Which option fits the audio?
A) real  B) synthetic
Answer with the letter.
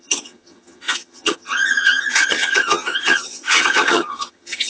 B